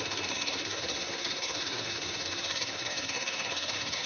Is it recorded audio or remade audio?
remade